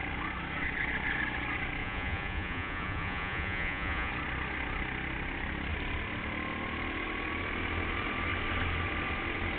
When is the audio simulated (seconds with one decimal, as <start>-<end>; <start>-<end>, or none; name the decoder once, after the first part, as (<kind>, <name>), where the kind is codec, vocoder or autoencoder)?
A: 1.8-4.1 (vocoder, Vocos)